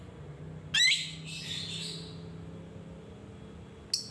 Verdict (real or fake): real